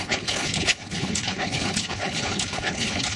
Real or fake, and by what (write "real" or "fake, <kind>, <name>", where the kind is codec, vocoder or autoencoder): fake, codec, HILCodec